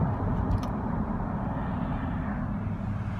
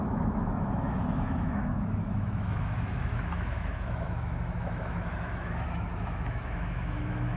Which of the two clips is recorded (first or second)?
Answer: first